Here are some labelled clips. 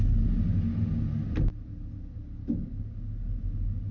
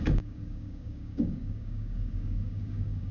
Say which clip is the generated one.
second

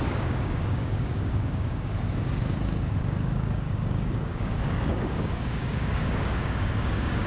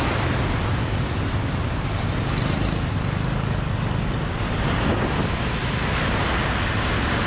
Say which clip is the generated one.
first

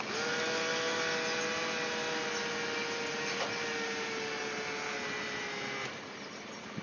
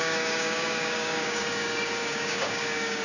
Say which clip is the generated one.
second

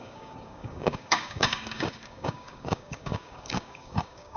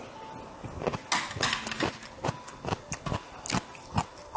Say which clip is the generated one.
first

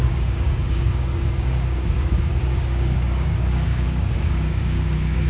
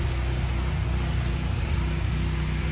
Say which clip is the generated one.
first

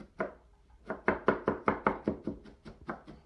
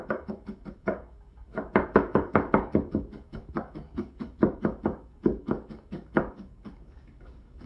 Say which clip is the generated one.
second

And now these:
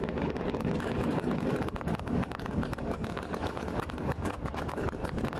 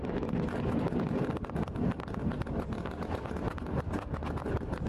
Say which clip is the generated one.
first